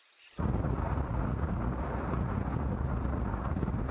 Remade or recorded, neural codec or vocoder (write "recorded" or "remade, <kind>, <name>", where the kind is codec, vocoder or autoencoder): remade, vocoder, Vocos